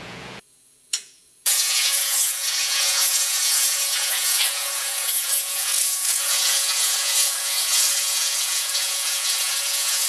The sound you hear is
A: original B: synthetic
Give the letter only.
B